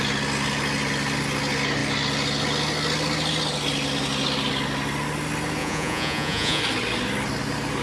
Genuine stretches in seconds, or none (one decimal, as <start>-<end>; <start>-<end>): 0.0-5.6; 6.6-7.8